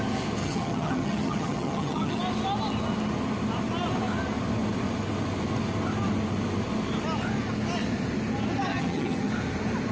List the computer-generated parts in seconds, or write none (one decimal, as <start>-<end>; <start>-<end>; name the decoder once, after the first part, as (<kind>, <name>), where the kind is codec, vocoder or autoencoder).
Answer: 0.4-2.2 (vocoder, HiFi-GAN); 8.7-9.3